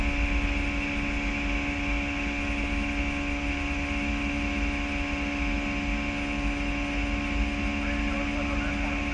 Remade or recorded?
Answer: recorded